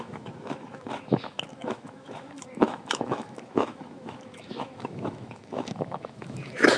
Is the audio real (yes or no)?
no